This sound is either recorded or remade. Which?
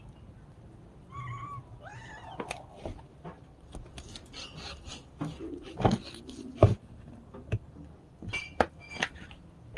recorded